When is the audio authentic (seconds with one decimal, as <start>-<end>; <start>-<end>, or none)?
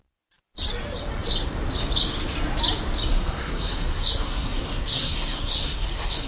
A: 0.0-3.1